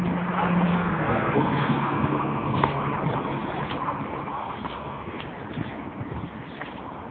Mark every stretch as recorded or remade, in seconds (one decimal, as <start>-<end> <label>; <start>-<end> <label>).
0.0-0.7 recorded; 0.7-2.8 remade; 2.8-4.4 recorded; 4.4-5.2 remade; 5.2-7.1 recorded

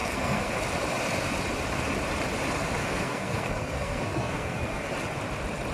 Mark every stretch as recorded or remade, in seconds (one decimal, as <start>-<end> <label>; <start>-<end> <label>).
0.0-0.5 remade; 0.5-2.8 recorded; 2.8-4.9 remade; 4.9-5.7 recorded

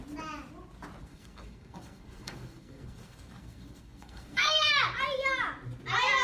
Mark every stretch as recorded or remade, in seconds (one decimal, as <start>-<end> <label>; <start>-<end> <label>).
0.0-1.0 recorded; 1.0-4.7 remade; 4.7-6.2 recorded

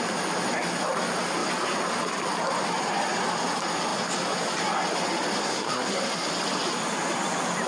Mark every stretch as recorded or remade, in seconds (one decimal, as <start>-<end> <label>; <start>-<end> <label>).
0.0-5.4 recorded; 5.4-6.3 remade; 6.3-7.7 recorded

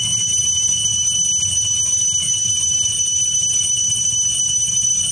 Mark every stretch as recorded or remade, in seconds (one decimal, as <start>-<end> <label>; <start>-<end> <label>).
0.0-5.1 recorded